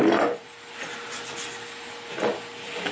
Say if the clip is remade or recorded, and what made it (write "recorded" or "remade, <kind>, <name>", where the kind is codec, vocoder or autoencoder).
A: recorded